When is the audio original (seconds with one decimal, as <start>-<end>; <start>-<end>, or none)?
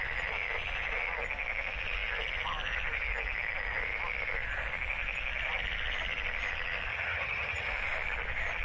0.0-6.9; 7.7-8.6